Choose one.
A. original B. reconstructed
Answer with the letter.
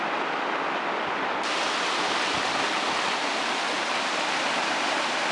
A